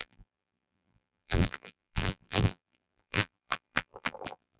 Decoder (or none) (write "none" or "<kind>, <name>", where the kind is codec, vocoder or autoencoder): vocoder, BigVGAN v2